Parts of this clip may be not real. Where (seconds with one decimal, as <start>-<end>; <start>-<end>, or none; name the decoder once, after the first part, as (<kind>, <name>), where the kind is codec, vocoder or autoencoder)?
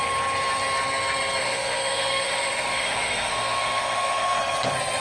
1.4-4.4 (autoencoder, DAC-VAE)